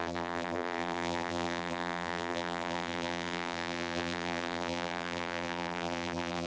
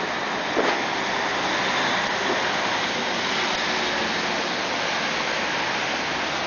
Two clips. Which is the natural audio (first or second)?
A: second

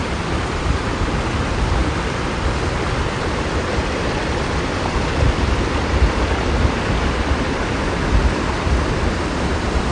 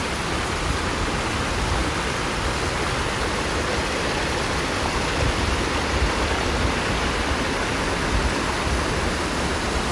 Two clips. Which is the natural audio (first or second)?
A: second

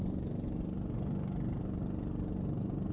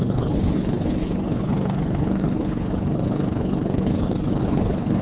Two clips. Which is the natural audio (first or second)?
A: first